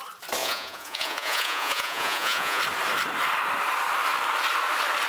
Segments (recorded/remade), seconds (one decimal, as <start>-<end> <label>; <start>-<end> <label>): 0.0-0.4 recorded; 0.4-2.6 remade; 2.6-5.1 recorded